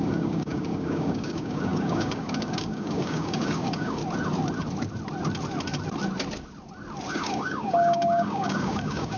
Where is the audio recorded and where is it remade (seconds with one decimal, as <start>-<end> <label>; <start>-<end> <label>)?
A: 0.0-4.0 remade; 4.0-7.1 recorded; 7.1-9.2 remade